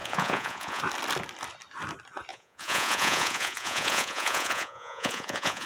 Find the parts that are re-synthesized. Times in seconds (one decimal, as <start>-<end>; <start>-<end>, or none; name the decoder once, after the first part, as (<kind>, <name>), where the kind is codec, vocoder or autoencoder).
0.0-0.8 (vocoder, Vocos); 2.3-5.7